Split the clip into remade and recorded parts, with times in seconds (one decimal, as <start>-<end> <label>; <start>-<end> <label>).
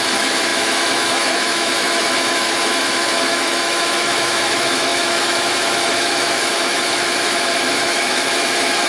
0.0-8.9 remade